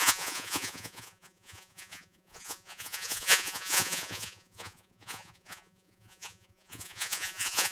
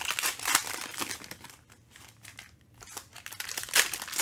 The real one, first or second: second